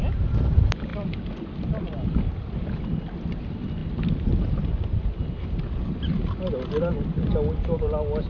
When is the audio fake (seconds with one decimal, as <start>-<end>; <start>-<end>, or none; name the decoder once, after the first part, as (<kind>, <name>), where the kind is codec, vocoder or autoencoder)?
none